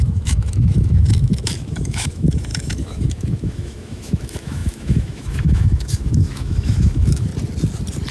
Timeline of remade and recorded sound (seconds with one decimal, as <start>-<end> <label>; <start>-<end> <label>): 0.0-7.3 remade; 7.3-8.1 recorded